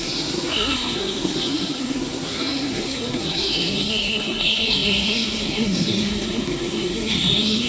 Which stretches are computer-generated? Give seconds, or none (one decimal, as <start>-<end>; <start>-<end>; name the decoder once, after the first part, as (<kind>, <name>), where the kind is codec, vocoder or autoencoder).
0.0-7.7 (codec, SNAC)

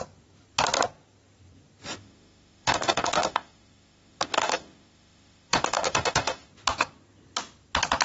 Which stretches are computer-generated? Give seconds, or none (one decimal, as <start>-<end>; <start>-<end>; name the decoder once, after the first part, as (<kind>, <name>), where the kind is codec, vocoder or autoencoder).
2.0-6.5 (autoencoder, DAC-VAE)

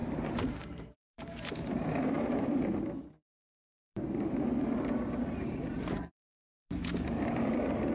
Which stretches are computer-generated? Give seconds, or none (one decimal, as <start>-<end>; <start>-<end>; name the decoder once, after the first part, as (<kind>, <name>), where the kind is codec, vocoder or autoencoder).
0.0-2.8 (vocoder, BigVGAN v2); 3.4-7.9

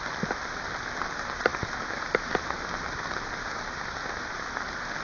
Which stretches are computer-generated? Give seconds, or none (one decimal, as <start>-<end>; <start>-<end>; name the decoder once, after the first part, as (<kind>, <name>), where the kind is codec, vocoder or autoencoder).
none

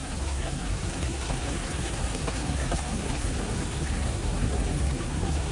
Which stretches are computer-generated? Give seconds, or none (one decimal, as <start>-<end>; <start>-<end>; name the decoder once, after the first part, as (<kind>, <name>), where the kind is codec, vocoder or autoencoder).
0.0-5.5 (codec, SNAC)

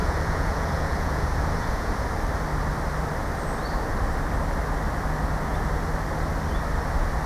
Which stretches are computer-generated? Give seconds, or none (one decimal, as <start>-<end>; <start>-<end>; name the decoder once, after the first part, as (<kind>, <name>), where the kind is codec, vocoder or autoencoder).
0.0-1.9 (vocoder, Vocos)

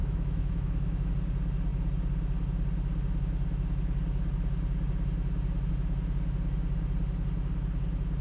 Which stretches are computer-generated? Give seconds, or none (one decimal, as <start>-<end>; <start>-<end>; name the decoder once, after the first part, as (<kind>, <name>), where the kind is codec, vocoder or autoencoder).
0.0-1.1 (autoencoder, DAC-VAE)